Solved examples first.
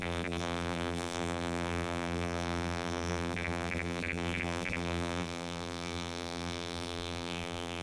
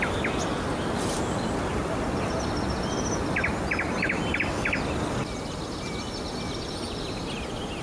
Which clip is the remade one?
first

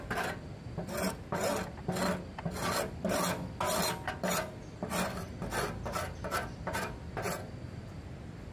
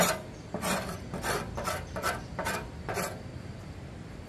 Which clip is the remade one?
second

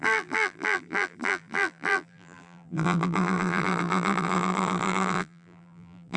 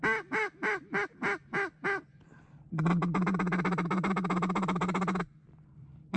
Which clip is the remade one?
first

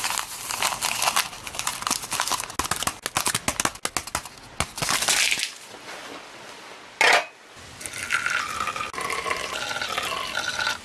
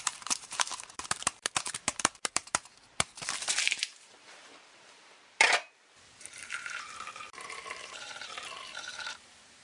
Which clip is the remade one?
second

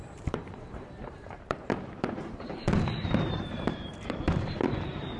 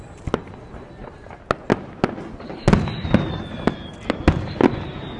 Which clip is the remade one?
first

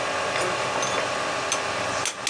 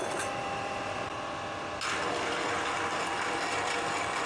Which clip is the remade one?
second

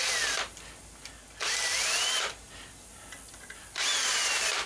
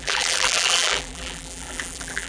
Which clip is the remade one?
second